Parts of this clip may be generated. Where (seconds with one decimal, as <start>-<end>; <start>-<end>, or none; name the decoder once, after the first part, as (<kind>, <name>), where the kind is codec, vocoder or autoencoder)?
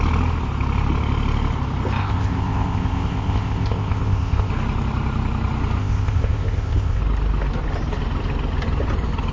2.0-4.5 (codec, ZipCodec); 5.8-7.0